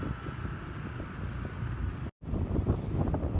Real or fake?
real